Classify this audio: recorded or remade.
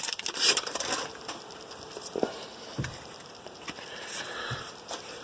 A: remade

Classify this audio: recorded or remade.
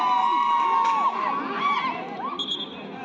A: recorded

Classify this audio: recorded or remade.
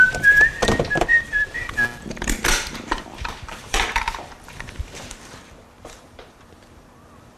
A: remade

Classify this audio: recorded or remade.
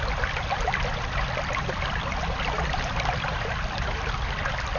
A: remade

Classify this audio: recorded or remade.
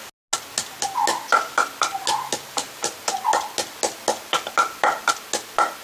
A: recorded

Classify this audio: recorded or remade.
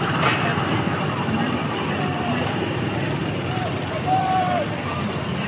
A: remade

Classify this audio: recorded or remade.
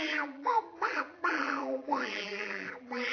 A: remade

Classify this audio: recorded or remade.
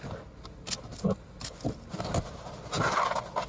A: recorded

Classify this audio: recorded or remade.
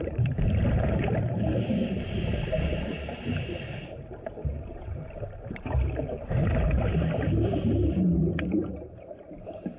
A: remade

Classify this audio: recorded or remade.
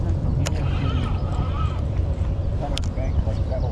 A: remade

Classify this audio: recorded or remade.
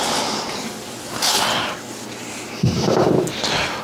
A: recorded